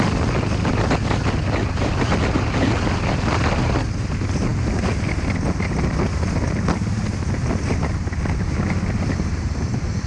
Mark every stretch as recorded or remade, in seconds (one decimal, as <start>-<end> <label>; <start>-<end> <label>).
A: 0.0-10.1 recorded